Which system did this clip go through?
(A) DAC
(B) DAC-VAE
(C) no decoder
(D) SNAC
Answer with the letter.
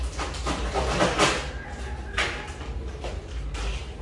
C